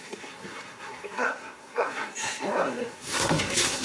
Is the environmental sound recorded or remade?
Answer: remade